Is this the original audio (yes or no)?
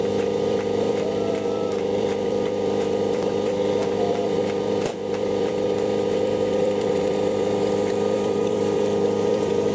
no